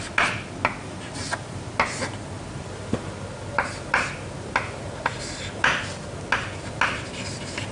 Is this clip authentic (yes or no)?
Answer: yes